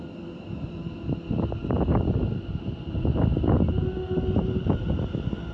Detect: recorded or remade recorded